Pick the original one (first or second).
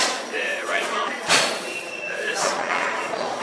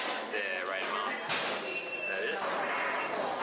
second